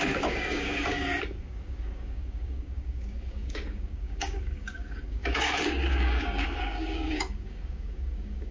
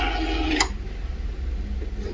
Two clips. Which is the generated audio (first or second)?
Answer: first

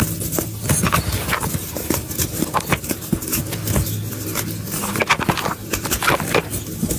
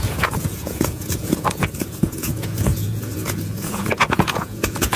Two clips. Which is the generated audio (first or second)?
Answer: second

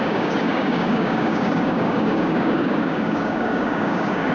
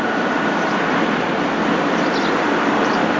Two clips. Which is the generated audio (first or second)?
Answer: first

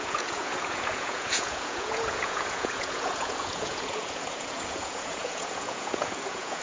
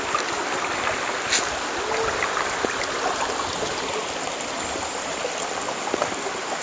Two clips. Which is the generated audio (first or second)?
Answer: first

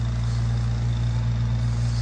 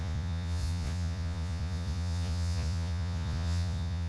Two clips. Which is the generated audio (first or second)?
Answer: second